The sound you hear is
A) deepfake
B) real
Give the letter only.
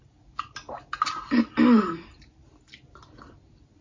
B